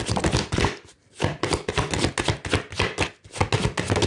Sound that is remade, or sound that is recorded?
recorded